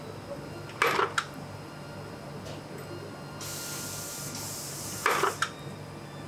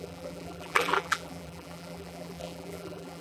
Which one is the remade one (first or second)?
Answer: second